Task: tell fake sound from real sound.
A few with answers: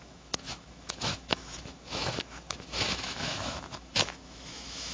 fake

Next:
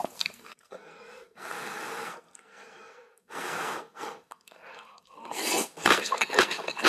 fake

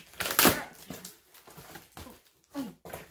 real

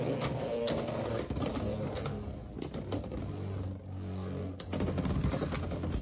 real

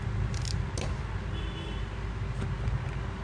real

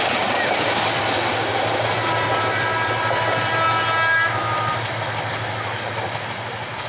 real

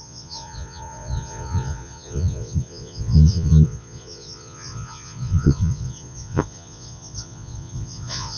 fake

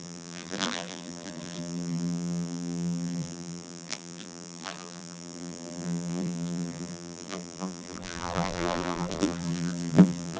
fake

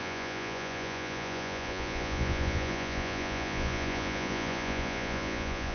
fake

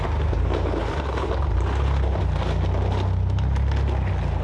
real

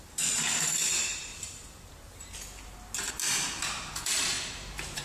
real